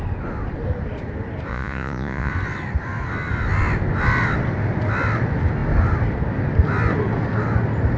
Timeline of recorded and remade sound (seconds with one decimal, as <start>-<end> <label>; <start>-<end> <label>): 0.0-1.5 recorded; 1.5-2.3 remade; 2.3-8.0 recorded